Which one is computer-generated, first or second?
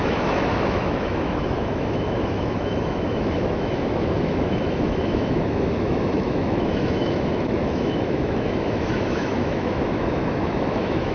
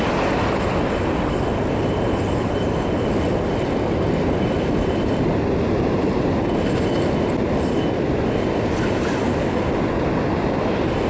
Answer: first